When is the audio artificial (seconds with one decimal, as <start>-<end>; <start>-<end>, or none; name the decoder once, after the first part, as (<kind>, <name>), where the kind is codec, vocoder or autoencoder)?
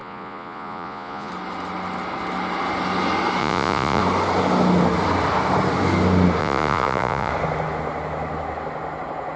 0.0-1.3 (vocoder, Vocos); 3.4-4.0; 6.4-7.3